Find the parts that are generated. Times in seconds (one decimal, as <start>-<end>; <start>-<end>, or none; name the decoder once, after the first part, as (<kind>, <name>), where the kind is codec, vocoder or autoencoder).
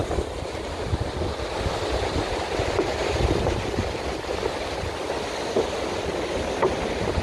none